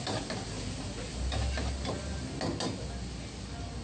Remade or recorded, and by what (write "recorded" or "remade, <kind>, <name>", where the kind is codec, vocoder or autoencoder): recorded